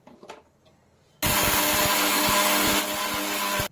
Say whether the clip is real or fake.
real